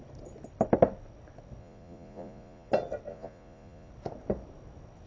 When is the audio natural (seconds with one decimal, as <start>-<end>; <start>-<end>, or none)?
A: 0.0-1.6; 2.7-3.1; 3.9-5.1